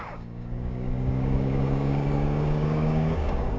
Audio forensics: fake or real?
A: fake